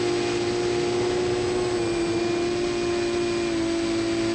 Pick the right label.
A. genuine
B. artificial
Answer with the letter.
A